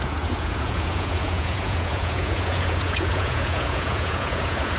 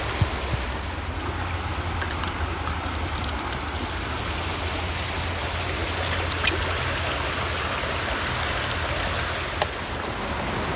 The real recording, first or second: second